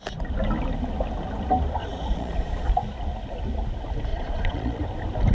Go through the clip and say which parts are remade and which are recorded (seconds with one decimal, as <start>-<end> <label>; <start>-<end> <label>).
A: 0.0-1.8 recorded; 1.8-2.7 remade; 2.7-4.1 recorded; 4.1-4.8 remade; 4.8-5.3 recorded